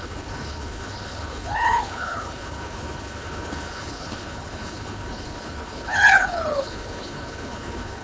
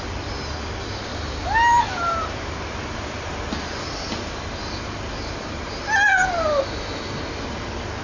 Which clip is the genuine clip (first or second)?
second